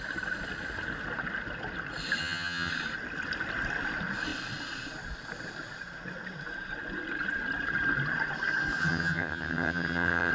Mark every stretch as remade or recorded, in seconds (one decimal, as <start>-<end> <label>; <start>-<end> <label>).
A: 0.0-2.2 recorded; 2.2-2.7 remade; 2.7-8.8 recorded; 8.8-10.3 remade